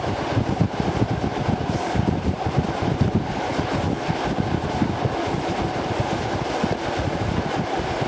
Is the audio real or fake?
real